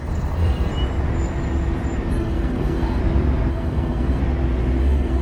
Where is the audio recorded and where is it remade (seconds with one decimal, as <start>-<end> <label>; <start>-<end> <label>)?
0.0-0.7 remade; 0.7-2.1 recorded; 2.1-3.0 remade; 3.0-3.5 recorded; 3.5-4.2 remade; 4.2-4.8 recorded; 4.8-5.2 remade